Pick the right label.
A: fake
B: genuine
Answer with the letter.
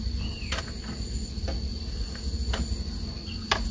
B